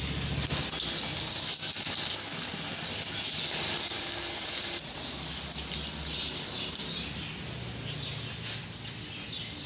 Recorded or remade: recorded